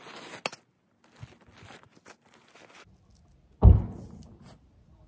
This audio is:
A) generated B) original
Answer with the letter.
B